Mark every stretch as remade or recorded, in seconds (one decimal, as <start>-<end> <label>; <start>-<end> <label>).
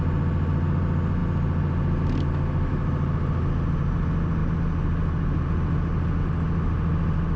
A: 0.0-7.4 recorded